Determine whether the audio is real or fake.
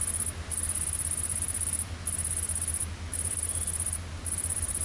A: real